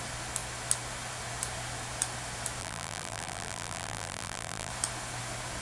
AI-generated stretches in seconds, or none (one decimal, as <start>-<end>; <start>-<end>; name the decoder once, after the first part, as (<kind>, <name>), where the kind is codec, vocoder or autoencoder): 2.6-4.7 (vocoder, BigVGAN v2)